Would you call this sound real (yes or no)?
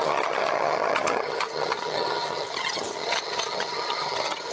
no